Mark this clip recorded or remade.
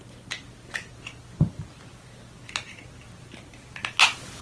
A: recorded